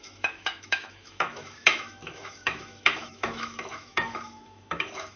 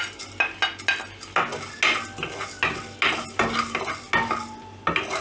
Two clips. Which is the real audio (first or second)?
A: second